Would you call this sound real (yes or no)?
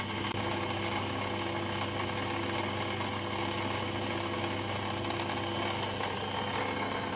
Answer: yes